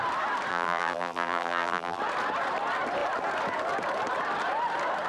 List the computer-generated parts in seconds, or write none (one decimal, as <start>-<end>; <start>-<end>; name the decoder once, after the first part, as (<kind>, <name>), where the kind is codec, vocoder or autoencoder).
0.5-2.0 (vocoder, BigVGAN v2)